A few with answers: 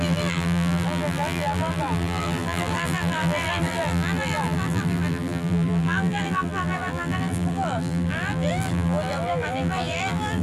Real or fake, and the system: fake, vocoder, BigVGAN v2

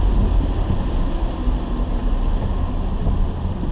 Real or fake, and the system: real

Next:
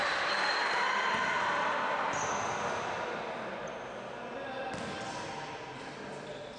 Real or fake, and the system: real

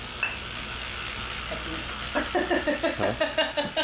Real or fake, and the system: real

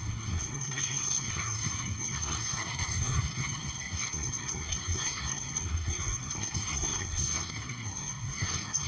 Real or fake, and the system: fake, codec, SNAC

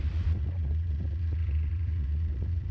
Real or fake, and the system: fake, vocoder, Vocos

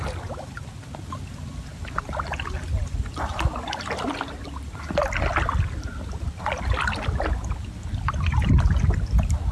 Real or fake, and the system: real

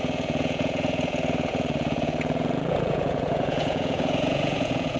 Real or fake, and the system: fake, vocoder, Vocos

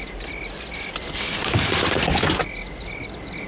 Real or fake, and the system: real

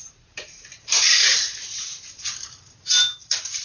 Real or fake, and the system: fake, vocoder, BigVGAN v2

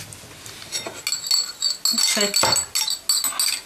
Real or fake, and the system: real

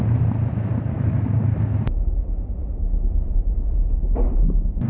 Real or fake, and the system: real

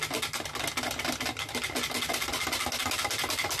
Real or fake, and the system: real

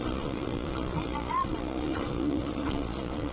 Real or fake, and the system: fake, vocoder, Vocos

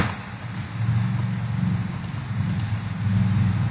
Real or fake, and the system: real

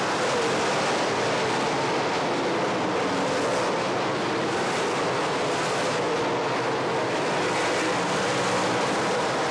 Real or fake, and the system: real